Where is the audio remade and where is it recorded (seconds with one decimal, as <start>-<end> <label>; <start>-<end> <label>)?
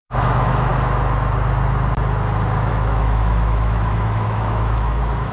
0.0-0.7 remade; 0.7-2.7 recorded; 2.7-5.3 remade